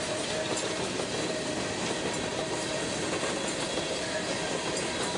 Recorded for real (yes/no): yes